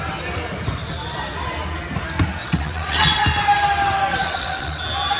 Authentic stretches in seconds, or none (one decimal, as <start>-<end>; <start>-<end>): 0.0-2.4; 3.2-4.1; 4.8-5.2